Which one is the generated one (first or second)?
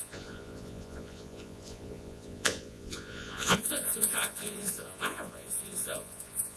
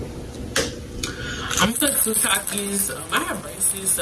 first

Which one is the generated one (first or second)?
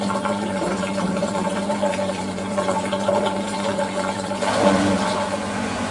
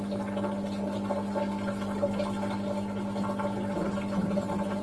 first